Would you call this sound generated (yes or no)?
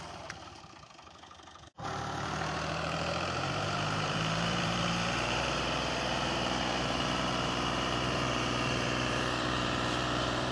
yes